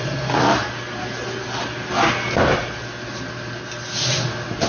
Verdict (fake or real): real